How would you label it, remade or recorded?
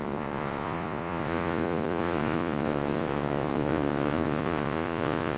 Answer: remade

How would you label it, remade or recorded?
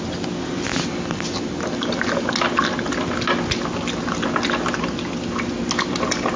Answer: recorded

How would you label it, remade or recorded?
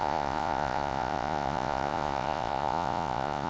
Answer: remade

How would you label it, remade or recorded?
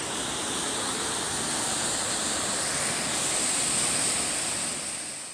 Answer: recorded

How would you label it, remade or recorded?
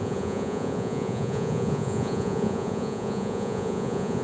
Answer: remade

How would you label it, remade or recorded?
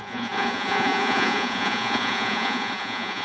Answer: remade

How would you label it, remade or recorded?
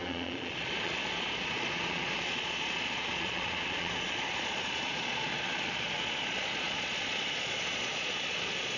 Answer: remade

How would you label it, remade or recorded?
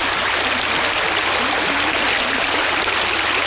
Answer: recorded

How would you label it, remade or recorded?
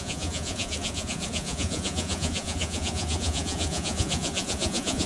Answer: remade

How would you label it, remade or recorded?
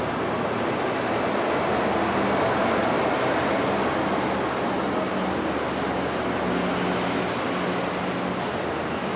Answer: recorded